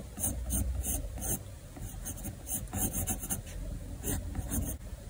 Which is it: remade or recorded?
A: recorded